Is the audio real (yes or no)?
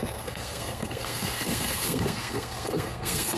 no